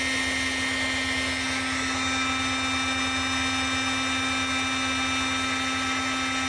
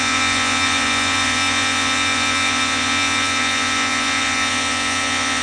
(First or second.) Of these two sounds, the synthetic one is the second